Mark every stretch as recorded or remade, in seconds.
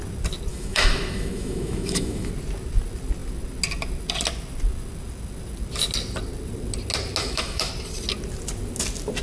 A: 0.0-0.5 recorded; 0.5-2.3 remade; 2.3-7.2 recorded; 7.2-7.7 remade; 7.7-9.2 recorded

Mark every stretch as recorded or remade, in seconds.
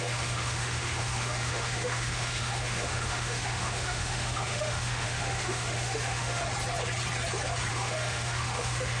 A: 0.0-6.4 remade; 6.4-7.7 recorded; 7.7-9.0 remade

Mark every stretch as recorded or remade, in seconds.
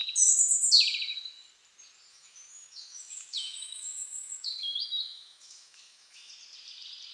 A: 0.0-2.1 recorded; 2.1-6.3 remade; 6.3-7.1 recorded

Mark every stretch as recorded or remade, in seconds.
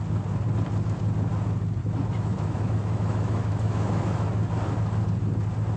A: 0.0-1.8 recorded; 1.8-4.5 remade; 4.5-5.8 recorded